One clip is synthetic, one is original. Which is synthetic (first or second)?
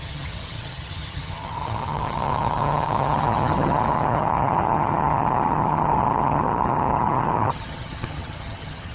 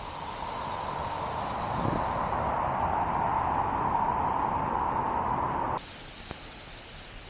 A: first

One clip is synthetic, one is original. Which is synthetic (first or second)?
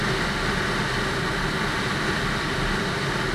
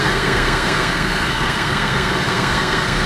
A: second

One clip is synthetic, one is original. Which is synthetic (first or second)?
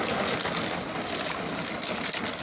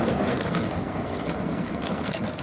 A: second